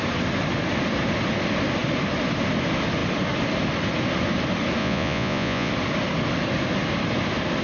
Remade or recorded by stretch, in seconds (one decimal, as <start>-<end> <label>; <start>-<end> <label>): 0.0-4.8 recorded; 4.8-5.7 remade; 5.7-7.6 recorded